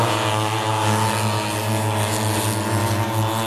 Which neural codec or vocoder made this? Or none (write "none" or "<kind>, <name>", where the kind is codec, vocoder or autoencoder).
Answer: none